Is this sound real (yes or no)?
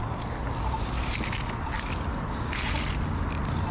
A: yes